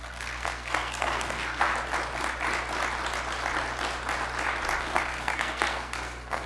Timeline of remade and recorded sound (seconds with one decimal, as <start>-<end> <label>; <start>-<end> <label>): 0.0-1.7 remade; 1.7-4.8 recorded; 4.8-6.5 remade